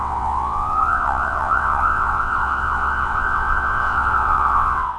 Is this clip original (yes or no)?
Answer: no